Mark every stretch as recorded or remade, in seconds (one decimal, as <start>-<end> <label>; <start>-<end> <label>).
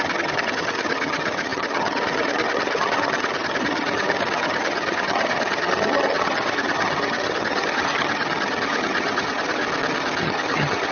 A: 0.0-9.6 remade; 9.6-10.2 recorded; 10.2-10.9 remade